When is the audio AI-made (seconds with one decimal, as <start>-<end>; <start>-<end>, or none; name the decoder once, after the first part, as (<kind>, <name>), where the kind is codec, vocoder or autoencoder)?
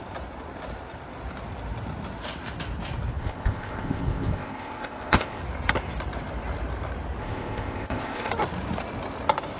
3.2-5.4 (codec, ZipCodec); 7.2-8.3